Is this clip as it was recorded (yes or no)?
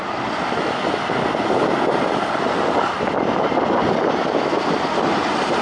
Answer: yes